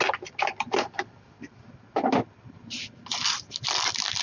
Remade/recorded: recorded